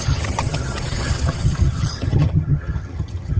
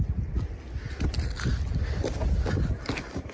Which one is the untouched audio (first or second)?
second